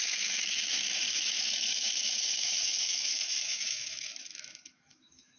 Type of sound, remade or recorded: remade